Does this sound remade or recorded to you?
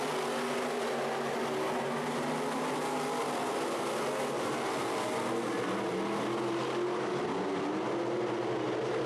recorded